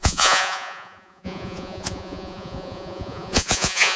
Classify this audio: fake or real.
fake